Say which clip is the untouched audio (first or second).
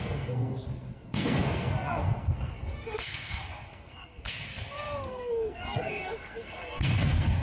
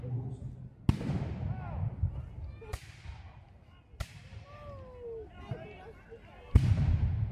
second